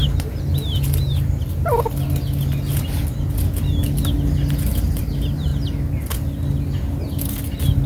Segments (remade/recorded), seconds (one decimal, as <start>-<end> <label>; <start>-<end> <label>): 0.0-4.7 recorded; 4.7-5.5 remade; 5.5-7.9 recorded